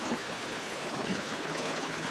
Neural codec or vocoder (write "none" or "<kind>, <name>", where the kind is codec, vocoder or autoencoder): codec, HILCodec